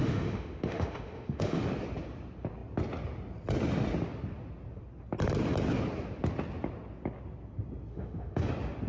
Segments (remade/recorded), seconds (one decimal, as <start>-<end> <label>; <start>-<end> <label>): 0.0-1.6 remade; 1.6-7.9 recorded; 7.9-8.5 remade; 8.5-8.9 recorded